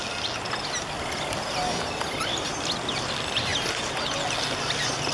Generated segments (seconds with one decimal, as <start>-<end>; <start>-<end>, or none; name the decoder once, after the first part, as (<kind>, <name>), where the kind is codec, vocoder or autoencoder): none